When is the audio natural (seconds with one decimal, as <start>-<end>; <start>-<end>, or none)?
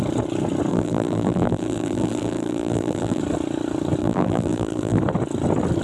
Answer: 0.0-0.7; 3.2-4.0; 5.0-5.8